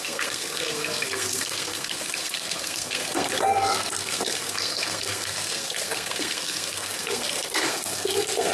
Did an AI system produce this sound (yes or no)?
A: yes